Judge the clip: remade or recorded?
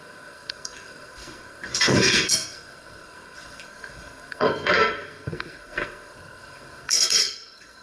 remade